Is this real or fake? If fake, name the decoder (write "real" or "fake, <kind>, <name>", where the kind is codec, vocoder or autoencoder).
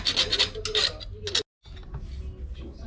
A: real